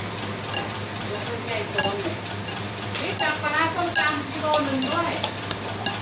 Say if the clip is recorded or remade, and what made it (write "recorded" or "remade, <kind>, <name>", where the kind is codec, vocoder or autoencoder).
recorded